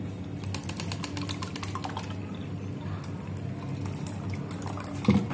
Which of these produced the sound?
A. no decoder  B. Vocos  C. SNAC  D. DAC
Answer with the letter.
A